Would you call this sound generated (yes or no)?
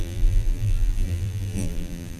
yes